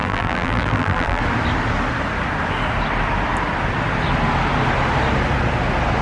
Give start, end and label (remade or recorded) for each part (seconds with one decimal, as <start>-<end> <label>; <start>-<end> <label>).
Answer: 0.0-1.2 remade; 1.2-6.0 recorded